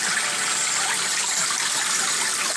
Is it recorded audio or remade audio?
recorded